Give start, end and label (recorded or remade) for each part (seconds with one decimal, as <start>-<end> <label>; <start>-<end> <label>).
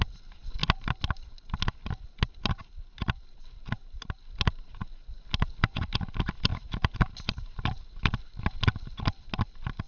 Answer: 0.0-9.9 recorded